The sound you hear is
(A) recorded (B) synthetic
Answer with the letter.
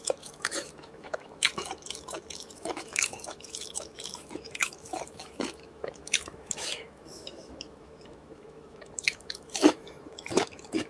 B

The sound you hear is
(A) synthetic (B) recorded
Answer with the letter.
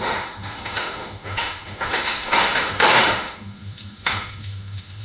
A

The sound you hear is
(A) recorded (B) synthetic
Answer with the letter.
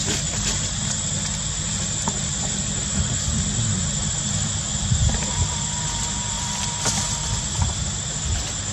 A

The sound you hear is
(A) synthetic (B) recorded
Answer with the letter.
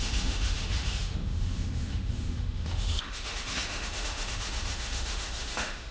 A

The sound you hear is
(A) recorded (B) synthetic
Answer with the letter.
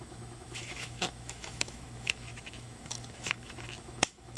B